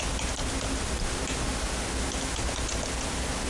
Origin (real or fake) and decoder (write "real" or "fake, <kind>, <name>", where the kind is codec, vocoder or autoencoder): real